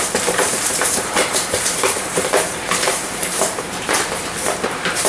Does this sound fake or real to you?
fake